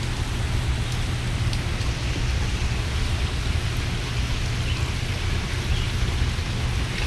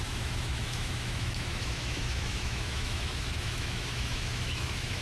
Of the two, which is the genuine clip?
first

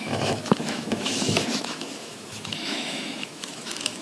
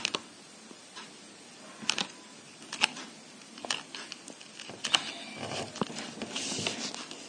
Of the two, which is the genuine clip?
second